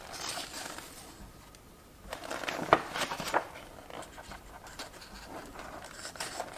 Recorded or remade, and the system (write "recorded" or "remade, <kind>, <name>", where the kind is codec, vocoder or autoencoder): remade, vocoder, BigVGAN v2